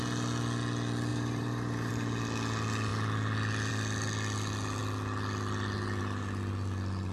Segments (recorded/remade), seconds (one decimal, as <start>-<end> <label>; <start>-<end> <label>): 0.0-1.1 recorded; 1.1-1.9 remade; 1.9-7.1 recorded